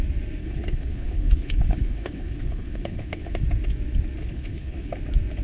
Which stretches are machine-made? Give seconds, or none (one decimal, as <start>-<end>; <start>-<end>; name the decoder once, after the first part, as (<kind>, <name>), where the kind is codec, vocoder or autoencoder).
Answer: 0.4-3.3 (codec, HILCodec); 4.2-4.9